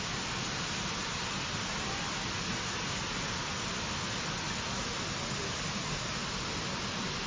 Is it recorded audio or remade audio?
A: recorded